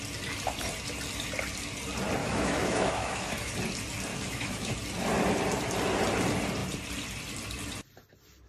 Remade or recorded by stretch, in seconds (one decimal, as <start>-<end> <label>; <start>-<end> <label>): 0.0-2.2 recorded; 2.2-3.5 remade; 3.5-4.1 recorded; 4.1-4.7 remade; 4.7-8.5 recorded